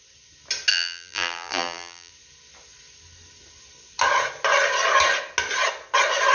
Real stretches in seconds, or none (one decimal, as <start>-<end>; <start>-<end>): 0.0-0.7; 2.1-6.3